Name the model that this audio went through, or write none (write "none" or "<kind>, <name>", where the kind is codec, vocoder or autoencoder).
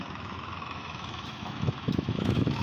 autoencoder, DAC-VAE